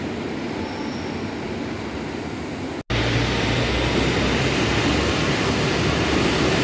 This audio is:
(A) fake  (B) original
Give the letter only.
B